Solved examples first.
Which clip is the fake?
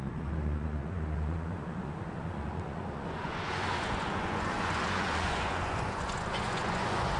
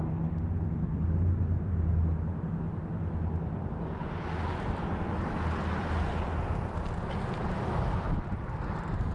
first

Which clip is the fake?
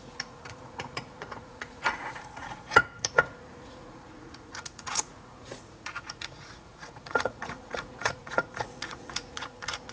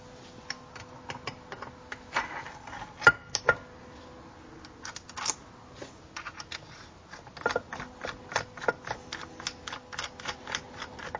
first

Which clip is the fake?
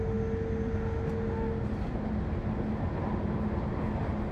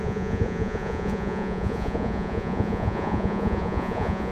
second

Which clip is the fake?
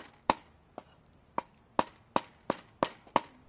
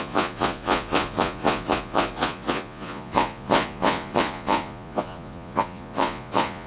second